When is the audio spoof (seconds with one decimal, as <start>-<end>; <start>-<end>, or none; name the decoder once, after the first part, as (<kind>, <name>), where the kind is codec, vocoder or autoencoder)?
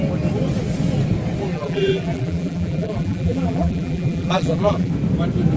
1.5-4.9 (vocoder, BigVGAN v2)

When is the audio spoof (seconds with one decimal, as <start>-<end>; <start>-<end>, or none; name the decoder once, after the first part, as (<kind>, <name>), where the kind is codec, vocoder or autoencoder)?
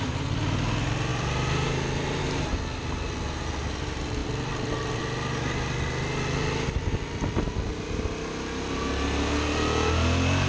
none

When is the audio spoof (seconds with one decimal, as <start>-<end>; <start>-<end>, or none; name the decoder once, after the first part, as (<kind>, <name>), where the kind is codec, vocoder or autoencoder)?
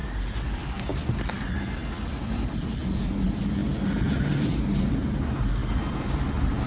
none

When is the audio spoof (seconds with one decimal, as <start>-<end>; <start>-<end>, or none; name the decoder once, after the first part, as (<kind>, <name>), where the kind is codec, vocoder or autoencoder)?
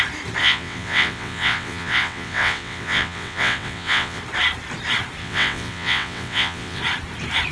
0.4-4.2 (vocoder, WaveNeXt); 5.2-6.8